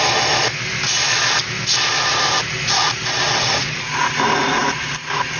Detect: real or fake real